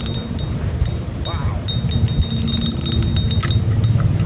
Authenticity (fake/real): real